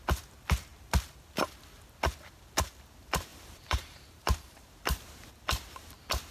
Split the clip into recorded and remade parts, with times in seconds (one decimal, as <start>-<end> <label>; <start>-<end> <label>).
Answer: 0.0-3.3 recorded; 3.3-4.7 remade; 4.7-6.3 recorded